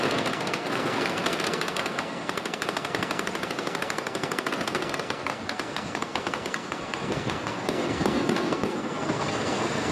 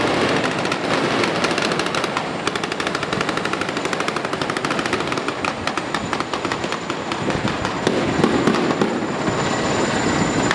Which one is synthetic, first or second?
first